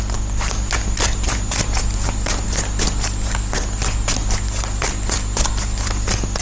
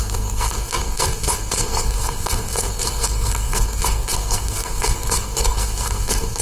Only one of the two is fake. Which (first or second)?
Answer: second